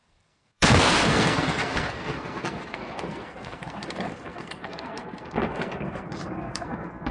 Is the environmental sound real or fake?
fake